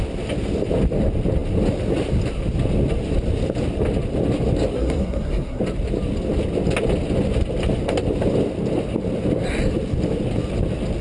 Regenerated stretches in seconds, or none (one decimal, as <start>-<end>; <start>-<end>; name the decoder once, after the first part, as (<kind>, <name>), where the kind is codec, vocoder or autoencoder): 4.7-5.6 (codec, SNAC)

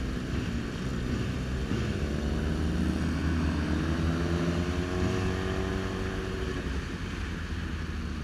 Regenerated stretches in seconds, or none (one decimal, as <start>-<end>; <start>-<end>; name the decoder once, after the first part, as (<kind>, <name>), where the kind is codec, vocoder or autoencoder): none

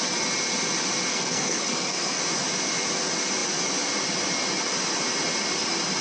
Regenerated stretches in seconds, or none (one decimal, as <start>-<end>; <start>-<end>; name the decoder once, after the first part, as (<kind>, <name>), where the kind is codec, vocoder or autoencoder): 1.1-2.2 (codec, SNAC)

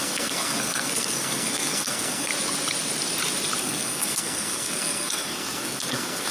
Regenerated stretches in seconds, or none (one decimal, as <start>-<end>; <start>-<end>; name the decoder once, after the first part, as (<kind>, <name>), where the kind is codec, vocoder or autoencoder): 0.0-2.3 (codec, SNAC); 3.6-6.3

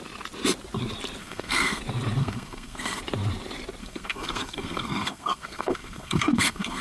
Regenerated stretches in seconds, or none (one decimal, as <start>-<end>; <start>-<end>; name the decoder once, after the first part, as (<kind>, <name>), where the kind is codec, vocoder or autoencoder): 1.2-1.8 (codec, SNAC); 2.2-3.0; 3.8-6.8

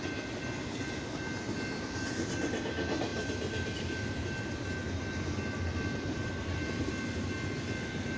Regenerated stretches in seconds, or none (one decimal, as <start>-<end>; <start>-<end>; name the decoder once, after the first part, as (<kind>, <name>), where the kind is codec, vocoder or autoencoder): none

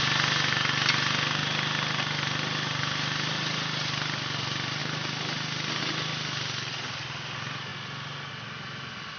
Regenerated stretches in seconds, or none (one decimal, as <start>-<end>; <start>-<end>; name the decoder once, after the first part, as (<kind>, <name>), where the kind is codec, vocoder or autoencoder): none